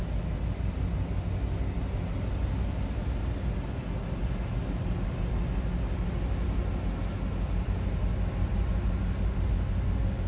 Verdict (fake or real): real